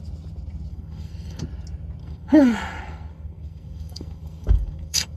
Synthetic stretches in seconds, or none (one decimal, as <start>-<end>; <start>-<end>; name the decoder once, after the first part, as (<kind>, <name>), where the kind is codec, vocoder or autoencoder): 0.7-1.4 (codec, SNAC); 2.0-5.2